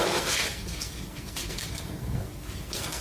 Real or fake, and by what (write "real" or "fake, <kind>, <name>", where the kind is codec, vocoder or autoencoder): fake, codec, SNAC